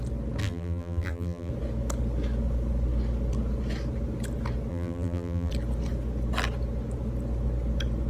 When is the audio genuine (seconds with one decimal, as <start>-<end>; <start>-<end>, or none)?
0.0-0.4; 1.5-4.7; 5.5-8.1